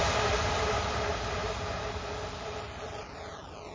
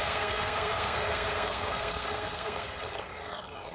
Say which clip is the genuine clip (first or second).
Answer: first